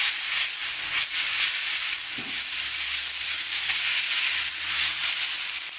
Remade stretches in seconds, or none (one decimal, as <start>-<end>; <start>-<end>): none